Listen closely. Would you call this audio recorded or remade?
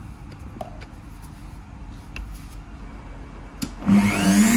recorded